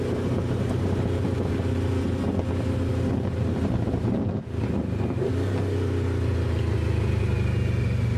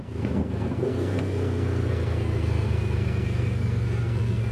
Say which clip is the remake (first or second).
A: second